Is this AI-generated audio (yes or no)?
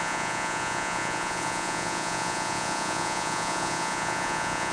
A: yes